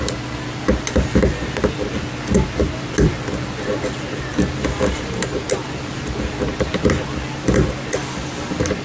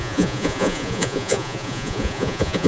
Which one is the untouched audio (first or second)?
first